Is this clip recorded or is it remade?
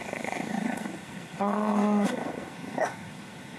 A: remade